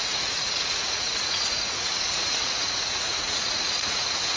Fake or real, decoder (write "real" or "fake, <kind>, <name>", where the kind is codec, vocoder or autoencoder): fake, vocoder, Vocos